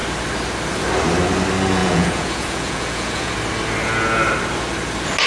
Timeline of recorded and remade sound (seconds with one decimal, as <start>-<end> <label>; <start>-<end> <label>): 0.0-1.8 recorded; 1.8-3.3 remade; 3.3-5.3 recorded